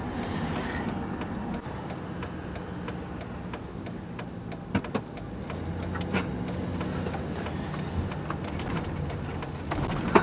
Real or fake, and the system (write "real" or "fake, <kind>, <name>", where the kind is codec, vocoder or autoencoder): real